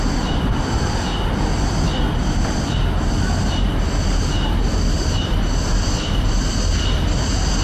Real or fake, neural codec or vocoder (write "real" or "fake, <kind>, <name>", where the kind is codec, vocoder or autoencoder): fake, vocoder, BigVGAN v2